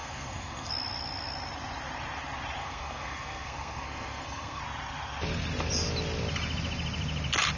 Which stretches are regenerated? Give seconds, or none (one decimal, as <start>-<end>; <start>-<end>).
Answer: 0.0-0.7; 2.6-4.6